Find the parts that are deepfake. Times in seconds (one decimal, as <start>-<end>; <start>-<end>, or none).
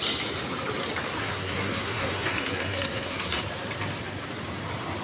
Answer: 1.2-3.4